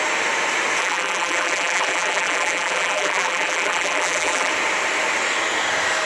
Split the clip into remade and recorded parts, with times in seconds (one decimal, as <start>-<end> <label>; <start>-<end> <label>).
0.0-0.8 recorded; 0.8-4.5 remade; 4.5-6.1 recorded